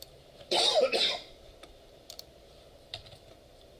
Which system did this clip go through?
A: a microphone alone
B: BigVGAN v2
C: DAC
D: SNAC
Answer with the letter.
B